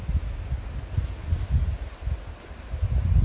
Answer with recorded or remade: recorded